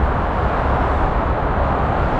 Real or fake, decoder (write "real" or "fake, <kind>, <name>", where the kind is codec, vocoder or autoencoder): real